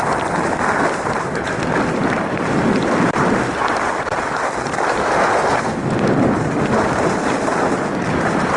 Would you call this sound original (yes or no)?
yes